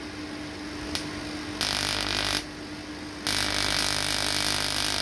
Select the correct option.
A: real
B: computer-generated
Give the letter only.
A